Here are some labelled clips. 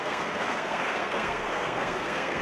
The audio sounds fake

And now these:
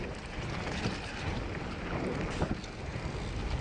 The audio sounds real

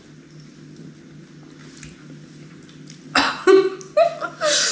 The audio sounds real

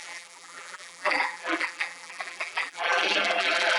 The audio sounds fake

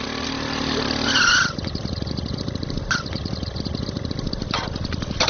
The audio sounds real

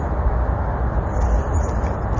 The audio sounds real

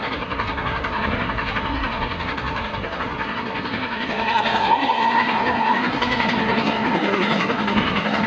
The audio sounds fake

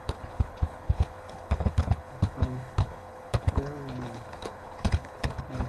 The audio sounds fake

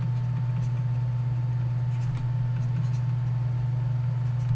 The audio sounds real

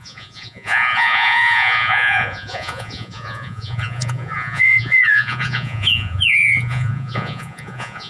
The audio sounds fake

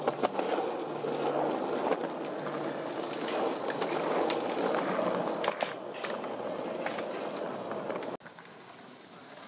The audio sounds real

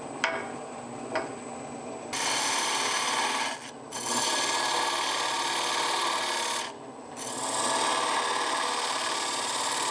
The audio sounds real